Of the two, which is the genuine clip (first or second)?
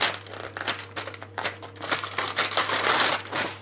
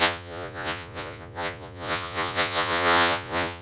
first